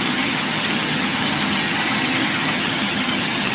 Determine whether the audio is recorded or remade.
remade